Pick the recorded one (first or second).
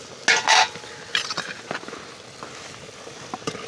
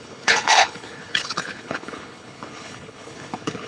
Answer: first